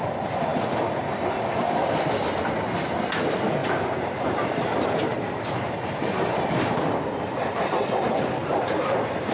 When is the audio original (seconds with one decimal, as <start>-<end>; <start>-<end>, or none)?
0.0-3.6; 7.6-8.4